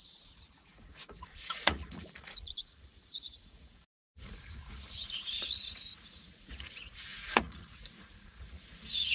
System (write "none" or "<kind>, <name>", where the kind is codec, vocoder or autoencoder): vocoder, Vocos